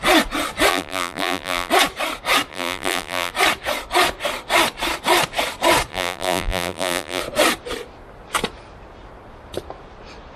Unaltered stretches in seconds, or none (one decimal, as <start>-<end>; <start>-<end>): 0.0-0.7; 1.7-2.5; 3.3-5.9; 7.2-10.4